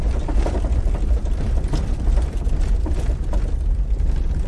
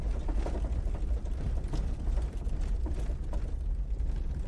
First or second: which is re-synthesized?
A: first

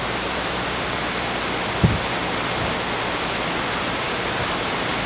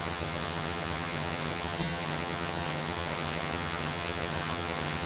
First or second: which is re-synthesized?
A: second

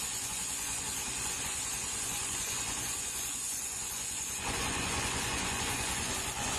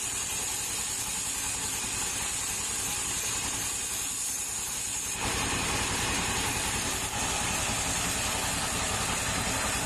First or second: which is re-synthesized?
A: first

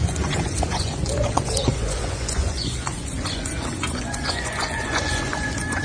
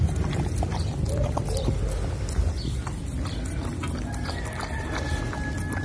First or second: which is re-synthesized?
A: first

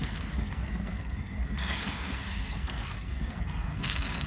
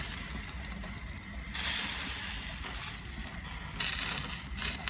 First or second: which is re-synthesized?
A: first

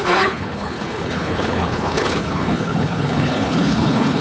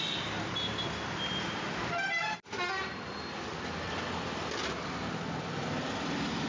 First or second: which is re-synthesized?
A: first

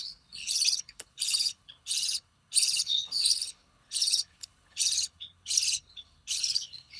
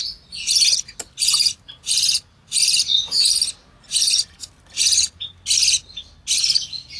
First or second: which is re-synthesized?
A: first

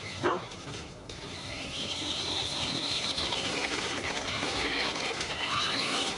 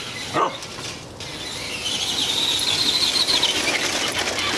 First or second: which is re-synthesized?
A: first